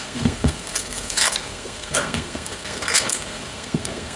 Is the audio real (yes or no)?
no